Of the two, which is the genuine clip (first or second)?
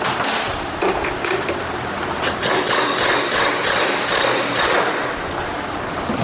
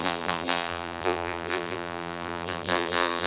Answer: first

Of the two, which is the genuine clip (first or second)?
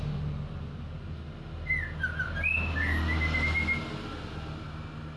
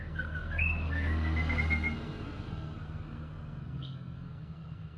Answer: first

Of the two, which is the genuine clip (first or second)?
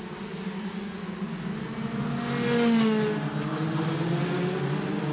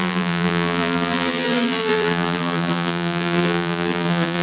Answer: first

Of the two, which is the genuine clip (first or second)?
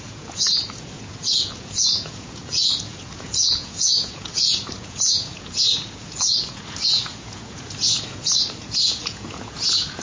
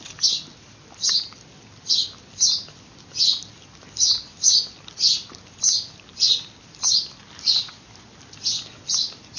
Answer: second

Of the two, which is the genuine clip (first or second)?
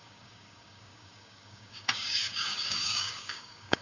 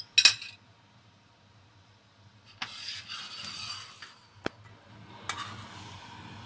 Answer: second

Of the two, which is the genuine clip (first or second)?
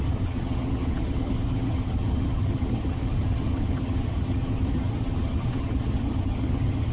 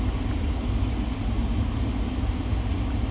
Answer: second